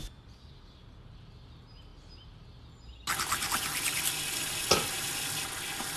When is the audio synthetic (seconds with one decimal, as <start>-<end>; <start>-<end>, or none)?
none